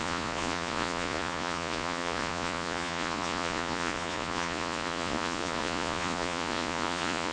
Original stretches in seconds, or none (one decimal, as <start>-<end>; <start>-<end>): none